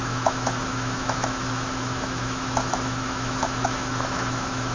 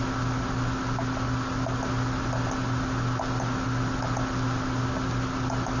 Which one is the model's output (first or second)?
first